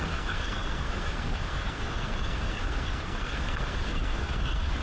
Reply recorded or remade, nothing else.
remade